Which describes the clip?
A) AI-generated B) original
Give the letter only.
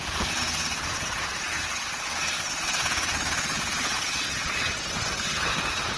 A